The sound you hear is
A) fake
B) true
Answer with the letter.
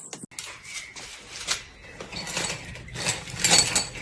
B